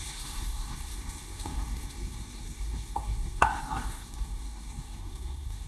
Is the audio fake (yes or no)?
yes